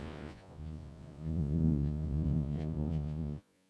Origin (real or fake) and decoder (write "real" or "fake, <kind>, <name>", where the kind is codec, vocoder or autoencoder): fake, vocoder, Vocos